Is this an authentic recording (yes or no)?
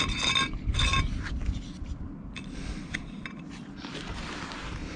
yes